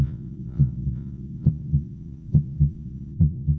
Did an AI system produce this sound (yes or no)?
yes